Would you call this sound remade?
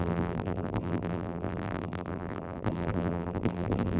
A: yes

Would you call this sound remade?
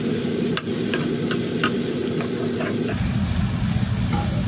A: no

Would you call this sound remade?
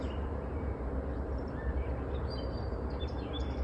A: yes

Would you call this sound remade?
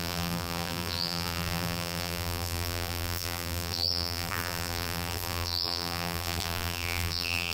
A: yes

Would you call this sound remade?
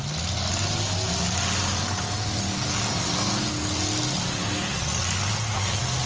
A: no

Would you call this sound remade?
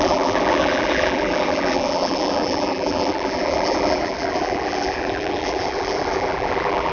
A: yes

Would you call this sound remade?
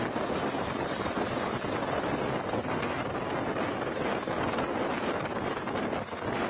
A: no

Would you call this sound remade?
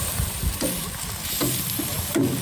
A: no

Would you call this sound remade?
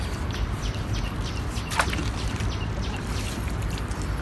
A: yes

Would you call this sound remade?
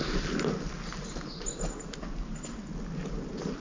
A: no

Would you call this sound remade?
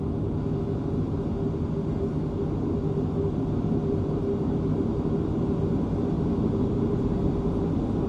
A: no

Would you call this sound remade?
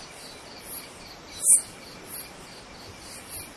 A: no